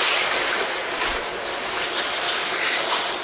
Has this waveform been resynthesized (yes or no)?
no